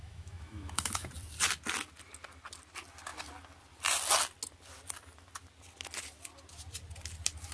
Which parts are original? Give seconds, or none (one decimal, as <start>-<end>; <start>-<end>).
1.1-7.5